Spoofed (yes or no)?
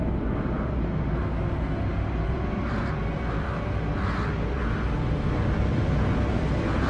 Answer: no